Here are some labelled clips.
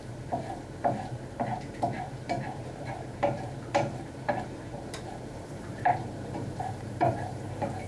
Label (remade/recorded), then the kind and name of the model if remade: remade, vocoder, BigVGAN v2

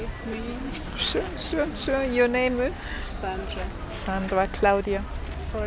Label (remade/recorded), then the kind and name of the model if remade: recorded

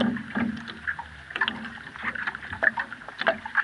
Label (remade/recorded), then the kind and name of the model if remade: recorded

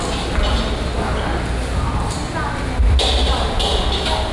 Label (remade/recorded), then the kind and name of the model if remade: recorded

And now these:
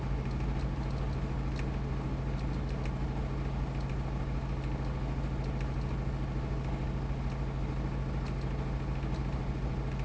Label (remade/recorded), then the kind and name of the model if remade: recorded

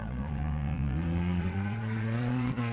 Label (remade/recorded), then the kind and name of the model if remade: remade, vocoder, Vocos